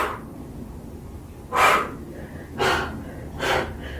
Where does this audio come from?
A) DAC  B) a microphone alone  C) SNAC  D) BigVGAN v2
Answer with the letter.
B